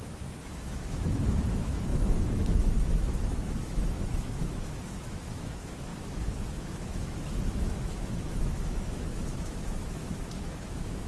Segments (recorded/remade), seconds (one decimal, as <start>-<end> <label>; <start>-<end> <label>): 0.0-11.1 remade

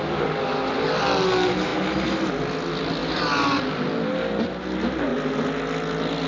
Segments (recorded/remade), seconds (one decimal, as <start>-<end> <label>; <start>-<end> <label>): 0.0-6.3 recorded

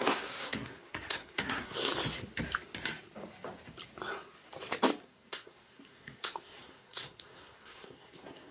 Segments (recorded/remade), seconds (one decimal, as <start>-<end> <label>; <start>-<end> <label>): 0.0-1.9 remade; 1.9-5.0 recorded; 5.0-8.5 remade

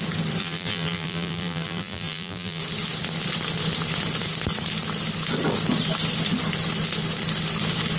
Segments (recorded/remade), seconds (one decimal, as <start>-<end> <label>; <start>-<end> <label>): 0.0-0.4 recorded; 0.4-2.6 remade; 2.6-8.0 recorded

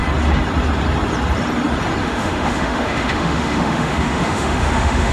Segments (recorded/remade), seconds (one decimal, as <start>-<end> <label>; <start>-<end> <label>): 0.0-2.0 recorded; 2.0-5.1 remade